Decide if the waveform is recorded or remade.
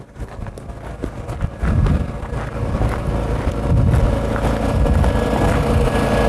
recorded